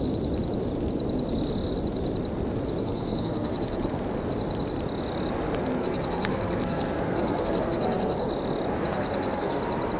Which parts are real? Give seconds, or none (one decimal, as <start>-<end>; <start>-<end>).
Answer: 0.0-2.8; 4.0-5.6; 8.3-8.9; 9.6-10.0